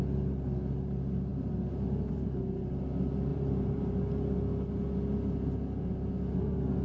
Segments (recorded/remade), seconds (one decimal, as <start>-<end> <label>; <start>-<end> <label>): 0.0-1.3 recorded; 1.3-2.1 remade; 2.1-3.3 recorded; 3.3-4.0 remade; 4.0-6.8 recorded